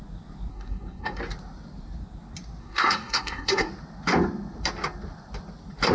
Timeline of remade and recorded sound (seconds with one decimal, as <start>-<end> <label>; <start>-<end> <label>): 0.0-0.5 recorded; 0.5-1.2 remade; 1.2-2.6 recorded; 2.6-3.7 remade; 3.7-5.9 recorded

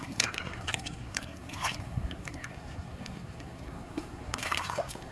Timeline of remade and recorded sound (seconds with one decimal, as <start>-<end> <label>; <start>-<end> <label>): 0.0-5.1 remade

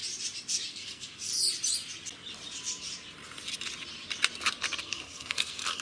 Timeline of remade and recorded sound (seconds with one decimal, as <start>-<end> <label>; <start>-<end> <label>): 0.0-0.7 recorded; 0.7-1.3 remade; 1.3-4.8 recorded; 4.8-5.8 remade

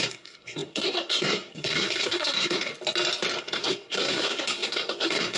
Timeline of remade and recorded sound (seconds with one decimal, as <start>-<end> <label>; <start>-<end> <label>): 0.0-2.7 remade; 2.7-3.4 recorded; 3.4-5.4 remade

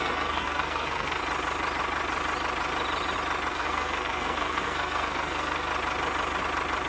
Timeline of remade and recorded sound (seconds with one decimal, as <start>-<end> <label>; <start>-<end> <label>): 0.0-1.2 remade; 1.2-3.5 recorded; 3.5-5.7 remade; 5.7-6.9 recorded

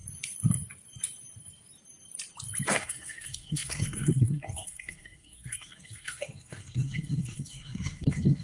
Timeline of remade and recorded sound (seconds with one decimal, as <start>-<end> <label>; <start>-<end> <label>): 0.0-2.7 recorded; 2.7-8.4 remade

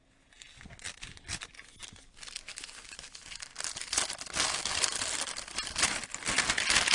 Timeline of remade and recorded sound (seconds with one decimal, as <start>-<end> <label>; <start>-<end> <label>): 0.0-6.9 recorded

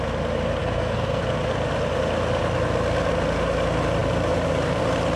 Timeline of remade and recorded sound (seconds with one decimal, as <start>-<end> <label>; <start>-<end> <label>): 0.0-0.6 recorded; 0.6-1.2 remade; 1.2-5.2 recorded